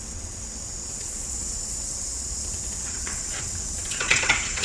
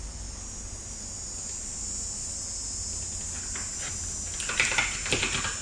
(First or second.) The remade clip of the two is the first